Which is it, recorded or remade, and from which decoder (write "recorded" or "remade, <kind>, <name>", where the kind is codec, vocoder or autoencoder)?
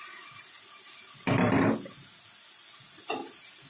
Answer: recorded